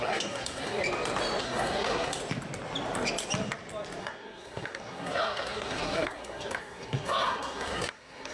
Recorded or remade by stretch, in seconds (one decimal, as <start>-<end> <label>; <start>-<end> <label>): 0.0-0.8 remade; 0.8-1.4 recorded; 1.4-2.2 remade; 2.2-4.0 recorded; 4.0-8.3 remade

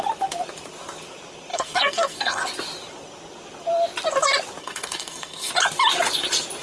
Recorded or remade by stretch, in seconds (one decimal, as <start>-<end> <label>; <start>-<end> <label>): 0.0-1.5 recorded; 1.5-2.4 remade; 2.4-4.6 recorded; 4.6-5.5 remade; 5.5-6.6 recorded

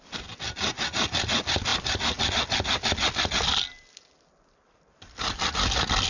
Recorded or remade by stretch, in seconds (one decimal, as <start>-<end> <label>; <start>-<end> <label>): 0.0-6.1 recorded

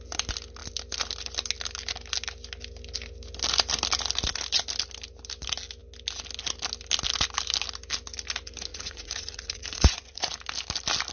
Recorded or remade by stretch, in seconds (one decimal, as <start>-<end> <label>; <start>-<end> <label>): 0.0-8.7 recorded; 8.7-10.3 remade; 10.3-11.1 recorded

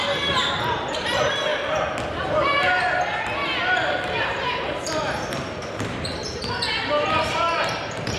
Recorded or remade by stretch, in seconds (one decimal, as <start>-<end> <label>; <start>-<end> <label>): 0.0-0.4 remade; 0.4-1.0 recorded; 1.0-1.5 remade; 1.5-5.3 recorded; 5.3-6.2 remade; 6.2-6.8 recorded; 6.8-8.2 remade

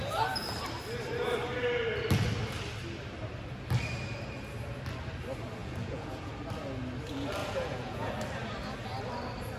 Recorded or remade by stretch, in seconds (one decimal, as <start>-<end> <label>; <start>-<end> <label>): 0.0-5.6 recorded; 5.6-6.3 remade; 6.3-7.4 recorded; 7.4-8.1 remade; 8.1-9.6 recorded

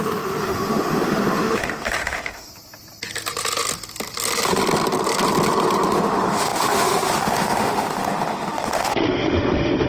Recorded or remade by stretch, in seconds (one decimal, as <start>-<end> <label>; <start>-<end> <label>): 0.0-2.5 remade; 2.5-5.9 recorded; 5.9-9.9 remade